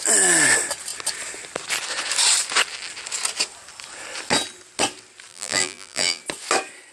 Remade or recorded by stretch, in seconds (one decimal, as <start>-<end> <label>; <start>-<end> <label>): 0.0-5.3 recorded; 5.3-6.2 remade; 6.2-6.9 recorded